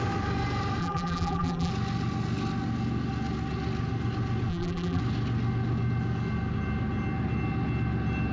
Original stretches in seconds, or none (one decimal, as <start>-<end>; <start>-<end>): 0.0-0.8; 1.7-4.5; 5.0-8.3